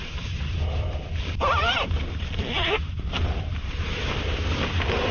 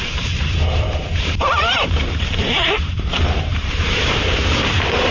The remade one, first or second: second